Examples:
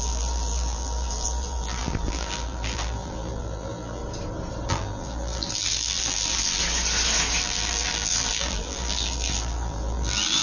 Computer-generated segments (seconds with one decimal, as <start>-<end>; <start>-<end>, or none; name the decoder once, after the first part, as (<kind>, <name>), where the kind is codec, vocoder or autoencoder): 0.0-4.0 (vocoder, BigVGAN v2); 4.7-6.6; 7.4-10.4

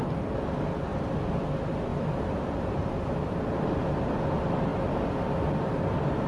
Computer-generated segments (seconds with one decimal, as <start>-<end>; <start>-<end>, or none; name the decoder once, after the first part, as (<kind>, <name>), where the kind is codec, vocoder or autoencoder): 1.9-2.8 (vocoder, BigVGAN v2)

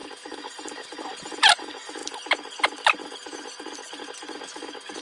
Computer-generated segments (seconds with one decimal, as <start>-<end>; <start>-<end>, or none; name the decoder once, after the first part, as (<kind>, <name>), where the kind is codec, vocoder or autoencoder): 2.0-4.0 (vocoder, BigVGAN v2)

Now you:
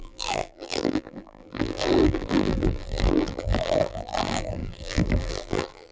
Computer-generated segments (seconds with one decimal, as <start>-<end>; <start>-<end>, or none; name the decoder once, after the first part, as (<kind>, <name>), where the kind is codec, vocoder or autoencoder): 0.0-5.9 (vocoder, BigVGAN v2)

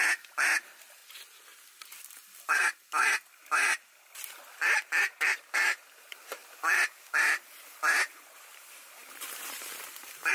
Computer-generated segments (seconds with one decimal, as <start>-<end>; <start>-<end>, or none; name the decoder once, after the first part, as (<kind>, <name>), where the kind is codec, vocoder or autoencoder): 0.0-1.0 (vocoder, BigVGAN v2); 4.5-10.3

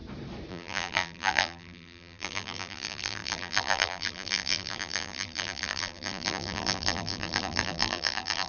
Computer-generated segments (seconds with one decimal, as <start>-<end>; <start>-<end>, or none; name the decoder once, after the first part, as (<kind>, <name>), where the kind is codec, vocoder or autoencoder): 0.5-8.5 (vocoder, BigVGAN v2)

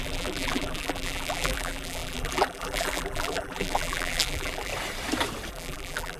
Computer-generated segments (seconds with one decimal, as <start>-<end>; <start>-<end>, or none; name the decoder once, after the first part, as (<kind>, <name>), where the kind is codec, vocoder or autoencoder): 0.0-4.7 (vocoder, BigVGAN v2); 5.5-6.2